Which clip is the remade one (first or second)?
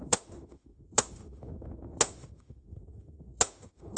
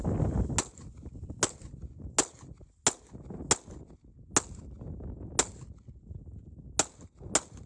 first